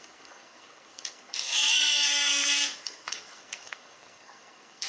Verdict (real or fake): fake